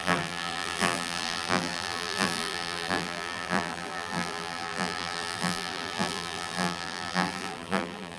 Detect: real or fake fake